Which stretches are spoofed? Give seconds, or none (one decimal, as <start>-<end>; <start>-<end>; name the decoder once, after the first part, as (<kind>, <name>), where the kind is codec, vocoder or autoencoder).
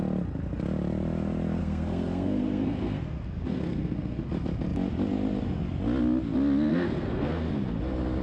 1.6-4.3 (codec, SNAC); 6.7-7.5